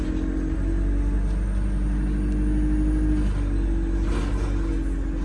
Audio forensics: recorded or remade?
recorded